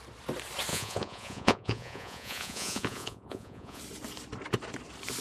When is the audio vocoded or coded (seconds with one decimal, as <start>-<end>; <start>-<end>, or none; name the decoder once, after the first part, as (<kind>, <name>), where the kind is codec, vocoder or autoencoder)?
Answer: 0.7-3.8 (vocoder, Vocos)